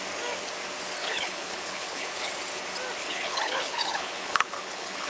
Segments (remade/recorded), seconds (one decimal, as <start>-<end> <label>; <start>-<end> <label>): 0.0-1.0 recorded; 1.0-2.3 remade; 2.3-3.0 recorded; 3.0-5.1 remade